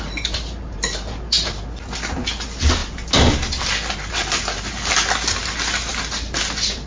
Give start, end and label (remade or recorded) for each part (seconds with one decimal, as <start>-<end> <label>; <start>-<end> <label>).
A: 0.0-6.9 recorded